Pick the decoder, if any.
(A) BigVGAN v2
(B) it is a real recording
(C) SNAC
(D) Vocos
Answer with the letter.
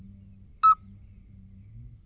B